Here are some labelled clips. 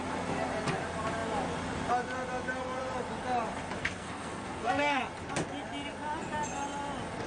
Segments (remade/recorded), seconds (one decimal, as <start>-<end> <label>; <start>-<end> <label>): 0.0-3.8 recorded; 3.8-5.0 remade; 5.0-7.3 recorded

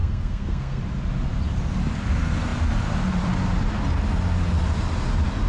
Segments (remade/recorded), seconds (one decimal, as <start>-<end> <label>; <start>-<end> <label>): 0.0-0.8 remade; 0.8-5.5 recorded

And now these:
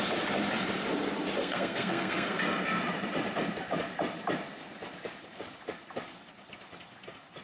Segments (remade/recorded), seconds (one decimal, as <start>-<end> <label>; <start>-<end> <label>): 0.0-1.4 recorded; 1.4-2.4 remade; 2.4-7.4 recorded

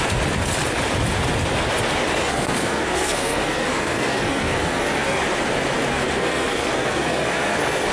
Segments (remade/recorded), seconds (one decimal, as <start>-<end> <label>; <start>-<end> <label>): 0.0-2.2 recorded; 2.2-5.2 remade; 5.2-5.9 recorded; 5.9-7.9 remade

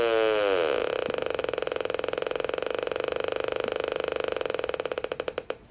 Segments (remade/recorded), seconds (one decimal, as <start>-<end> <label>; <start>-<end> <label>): 0.0-5.7 recorded